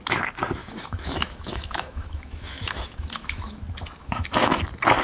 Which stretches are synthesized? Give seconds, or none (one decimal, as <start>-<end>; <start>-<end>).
0.6-3.6; 4.0-4.6